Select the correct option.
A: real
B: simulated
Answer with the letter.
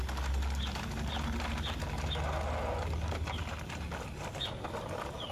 A